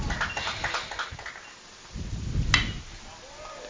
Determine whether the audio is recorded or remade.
recorded